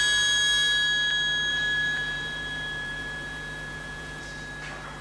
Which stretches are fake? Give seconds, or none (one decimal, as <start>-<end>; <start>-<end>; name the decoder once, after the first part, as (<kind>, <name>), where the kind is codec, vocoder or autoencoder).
1.5-4.2 (vocoder, Vocos)